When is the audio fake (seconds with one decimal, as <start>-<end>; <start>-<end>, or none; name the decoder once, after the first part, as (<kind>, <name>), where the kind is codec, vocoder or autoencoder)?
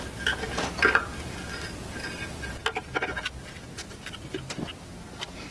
none